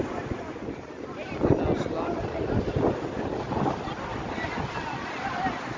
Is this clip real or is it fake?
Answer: real